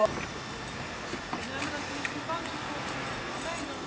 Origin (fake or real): real